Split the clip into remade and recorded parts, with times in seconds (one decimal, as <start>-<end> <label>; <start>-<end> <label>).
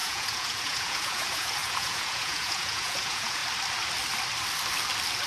0.0-3.4 remade; 3.4-5.3 recorded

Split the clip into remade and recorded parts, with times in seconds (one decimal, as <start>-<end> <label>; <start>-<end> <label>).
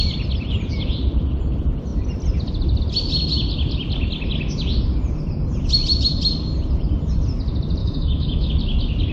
0.0-7.8 recorded; 7.8-8.5 remade; 8.5-9.1 recorded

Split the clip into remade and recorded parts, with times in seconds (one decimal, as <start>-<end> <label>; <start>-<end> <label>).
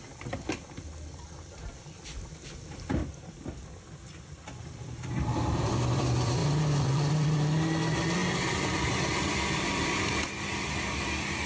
0.0-3.0 remade; 3.0-4.6 recorded; 4.6-11.5 remade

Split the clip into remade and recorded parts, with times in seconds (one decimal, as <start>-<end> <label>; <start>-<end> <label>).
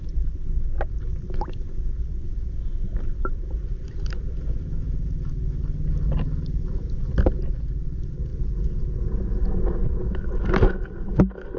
0.0-11.6 recorded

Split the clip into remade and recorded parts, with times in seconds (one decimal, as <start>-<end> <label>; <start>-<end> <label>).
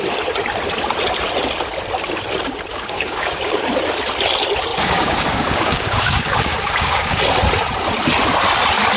0.0-2.7 recorded; 2.7-3.6 remade; 3.6-4.7 recorded; 4.7-7.2 remade; 7.2-9.0 recorded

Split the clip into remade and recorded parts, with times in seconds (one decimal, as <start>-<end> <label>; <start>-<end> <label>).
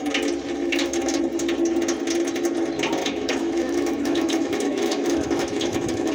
0.0-0.6 recorded; 0.6-1.2 remade; 1.2-3.0 recorded; 3.0-6.1 remade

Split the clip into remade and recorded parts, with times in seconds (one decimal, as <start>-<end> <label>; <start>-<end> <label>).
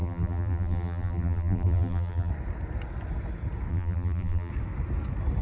0.0-2.3 remade; 2.3-3.7 recorded; 3.7-4.5 remade; 4.5-5.4 recorded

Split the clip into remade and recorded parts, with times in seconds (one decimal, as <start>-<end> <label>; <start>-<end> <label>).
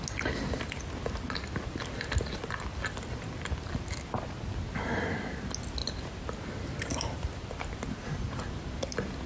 0.0-5.8 recorded; 5.8-8.8 remade; 8.8-9.3 recorded